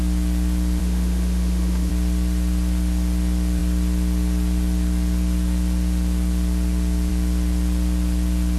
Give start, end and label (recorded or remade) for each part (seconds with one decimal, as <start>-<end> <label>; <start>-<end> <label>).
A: 0.0-0.8 recorded; 0.8-1.9 remade; 1.9-8.6 recorded